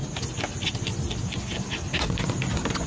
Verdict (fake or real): real